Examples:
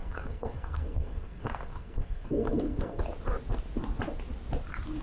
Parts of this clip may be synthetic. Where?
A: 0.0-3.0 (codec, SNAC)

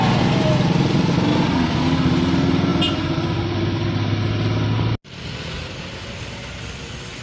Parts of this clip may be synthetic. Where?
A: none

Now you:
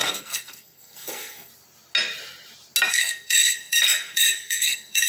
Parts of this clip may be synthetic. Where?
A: 0.0-1.5 (codec, SNAC); 2.9-5.1

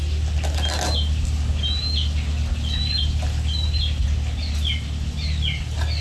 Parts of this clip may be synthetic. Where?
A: none

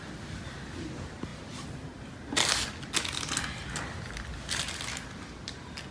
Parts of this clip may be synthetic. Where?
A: none